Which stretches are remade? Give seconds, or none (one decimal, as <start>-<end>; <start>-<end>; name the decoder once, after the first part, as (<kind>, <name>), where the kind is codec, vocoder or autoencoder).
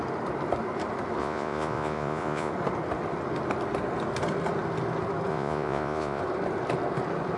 1.2-2.5 (vocoder, Vocos); 5.3-6.2